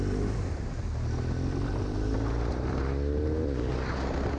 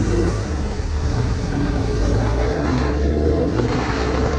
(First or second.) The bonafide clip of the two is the first